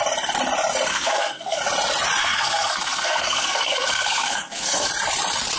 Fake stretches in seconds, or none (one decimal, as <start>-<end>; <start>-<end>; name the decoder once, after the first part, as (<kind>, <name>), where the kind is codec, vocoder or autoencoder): 0.9-1.6 (codec, SNAC); 2.2-4.9